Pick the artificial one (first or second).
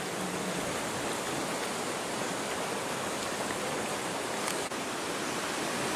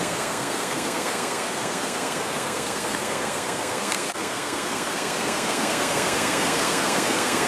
second